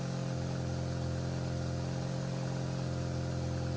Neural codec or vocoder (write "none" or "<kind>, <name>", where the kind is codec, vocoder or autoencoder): none